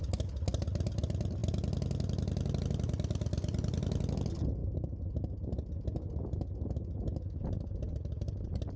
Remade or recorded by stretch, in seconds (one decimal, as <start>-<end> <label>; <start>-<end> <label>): 0.0-8.8 recorded